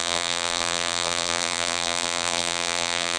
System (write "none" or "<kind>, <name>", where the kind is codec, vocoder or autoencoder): vocoder, BigVGAN v2